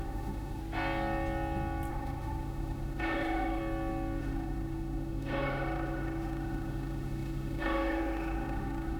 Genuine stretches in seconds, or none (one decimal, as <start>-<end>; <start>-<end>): 0.6-1.9; 3.6-4.2